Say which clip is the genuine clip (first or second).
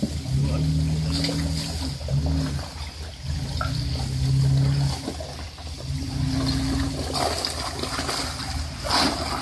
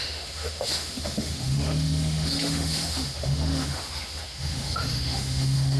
first